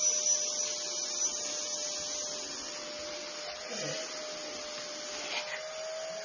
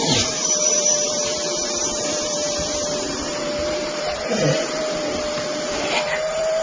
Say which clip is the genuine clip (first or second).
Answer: first